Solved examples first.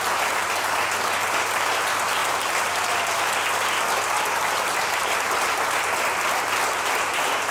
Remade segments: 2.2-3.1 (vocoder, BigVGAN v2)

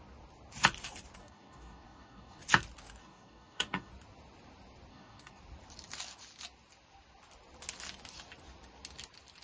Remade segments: 1.2-2.4 (codec, DAC); 3.0-3.9; 4.9-5.4

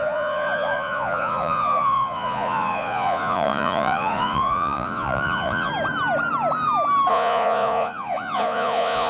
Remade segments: 0.0-5.7 (vocoder, Vocos); 7.1-9.1

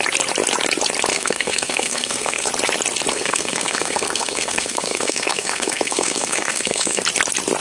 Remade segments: 1.1-2.5 (codec, SNAC); 3.1-7.0

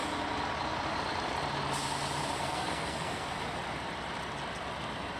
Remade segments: 2.4-3.3 (codec, SNAC)

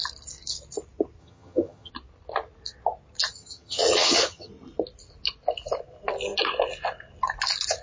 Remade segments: 1.2-1.9 (vocoder, HiFi-GAN); 3.3-4.5